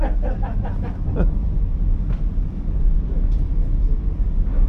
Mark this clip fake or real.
real